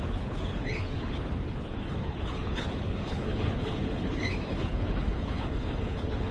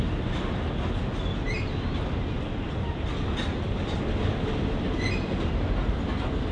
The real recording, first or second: second